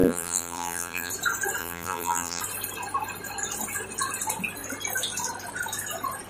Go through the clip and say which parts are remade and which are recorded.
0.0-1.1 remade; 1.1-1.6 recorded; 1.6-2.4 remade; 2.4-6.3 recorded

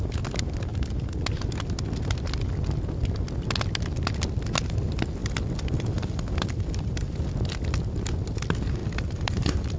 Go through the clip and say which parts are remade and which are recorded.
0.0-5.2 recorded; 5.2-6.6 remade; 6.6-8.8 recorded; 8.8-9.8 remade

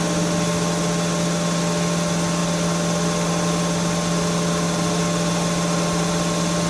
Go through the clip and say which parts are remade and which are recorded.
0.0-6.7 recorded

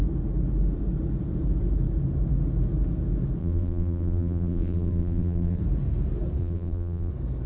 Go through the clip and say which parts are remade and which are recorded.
0.0-3.4 recorded; 3.4-5.6 remade; 5.6-6.4 recorded; 6.4-7.1 remade; 7.1-7.5 recorded

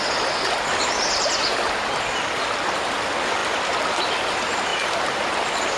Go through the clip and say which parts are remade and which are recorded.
0.0-4.7 remade; 4.7-5.8 recorded

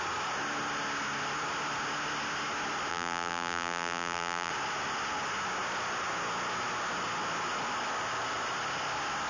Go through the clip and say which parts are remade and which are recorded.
0.0-2.9 recorded; 2.9-4.5 remade; 4.5-9.3 recorded